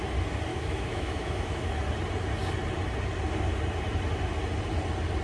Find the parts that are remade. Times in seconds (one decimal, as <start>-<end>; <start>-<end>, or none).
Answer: 0.5-1.7